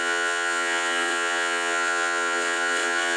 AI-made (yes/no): yes